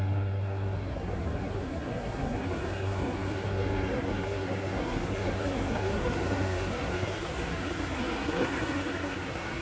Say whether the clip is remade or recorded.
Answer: remade